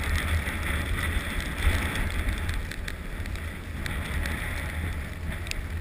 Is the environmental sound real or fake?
real